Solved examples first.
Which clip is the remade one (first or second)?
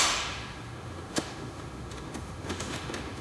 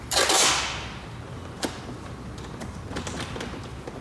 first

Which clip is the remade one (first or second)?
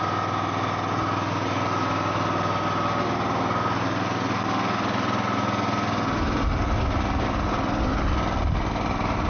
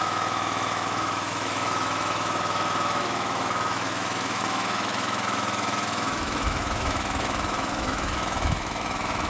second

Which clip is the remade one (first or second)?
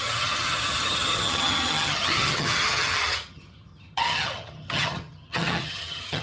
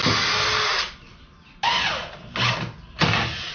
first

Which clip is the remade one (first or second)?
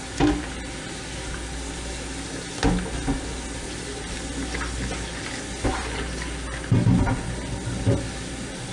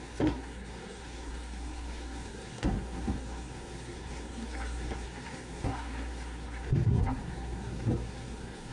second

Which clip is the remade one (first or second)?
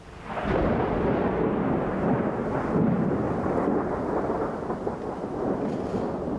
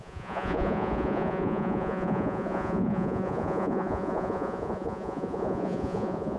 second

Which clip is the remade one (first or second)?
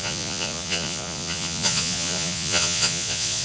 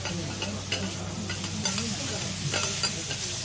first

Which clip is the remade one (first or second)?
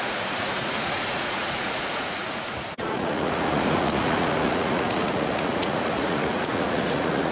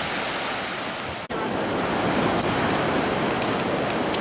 first